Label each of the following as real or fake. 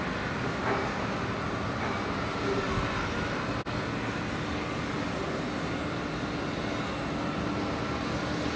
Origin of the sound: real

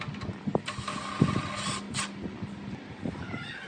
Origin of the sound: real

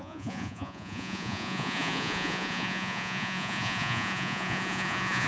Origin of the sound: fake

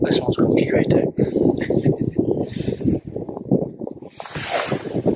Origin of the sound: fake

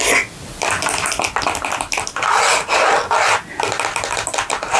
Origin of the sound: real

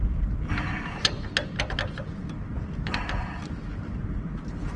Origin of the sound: real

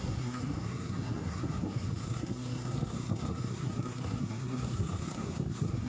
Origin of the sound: fake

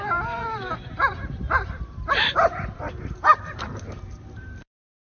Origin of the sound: fake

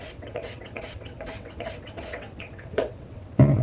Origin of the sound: fake